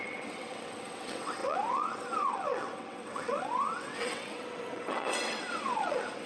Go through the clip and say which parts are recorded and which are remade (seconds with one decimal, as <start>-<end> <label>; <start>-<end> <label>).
0.0-6.3 remade